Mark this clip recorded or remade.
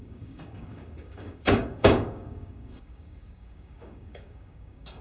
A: remade